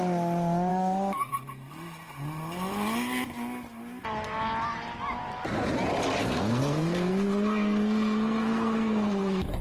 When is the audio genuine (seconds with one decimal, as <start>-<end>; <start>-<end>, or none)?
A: 0.0-0.7; 1.3-6.2